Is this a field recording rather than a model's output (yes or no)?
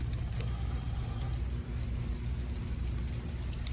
yes